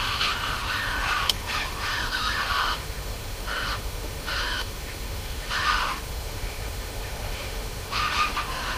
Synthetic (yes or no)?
yes